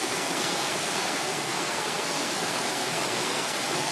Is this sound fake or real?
fake